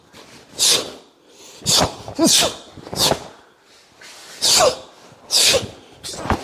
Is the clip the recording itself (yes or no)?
yes